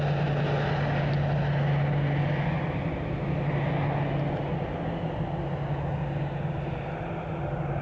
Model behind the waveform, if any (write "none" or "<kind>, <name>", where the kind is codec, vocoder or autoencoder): none